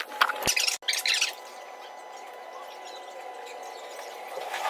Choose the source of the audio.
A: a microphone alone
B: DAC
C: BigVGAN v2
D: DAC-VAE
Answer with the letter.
A